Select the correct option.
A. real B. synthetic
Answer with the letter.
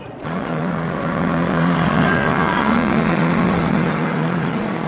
B